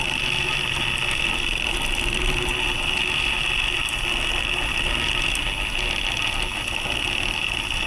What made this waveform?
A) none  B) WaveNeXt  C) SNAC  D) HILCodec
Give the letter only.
A